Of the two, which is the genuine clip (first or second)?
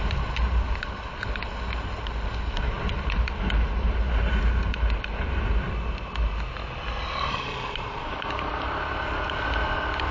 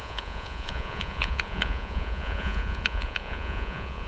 first